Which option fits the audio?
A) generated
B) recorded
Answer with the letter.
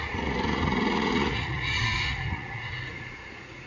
A